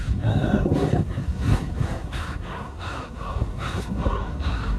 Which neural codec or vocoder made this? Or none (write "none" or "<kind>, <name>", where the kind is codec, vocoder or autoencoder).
codec, SNAC